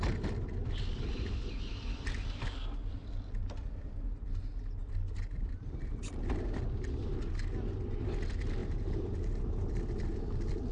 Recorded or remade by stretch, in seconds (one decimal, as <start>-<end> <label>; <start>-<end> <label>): 0.0-8.6 recorded; 8.6-9.8 remade; 9.8-10.7 recorded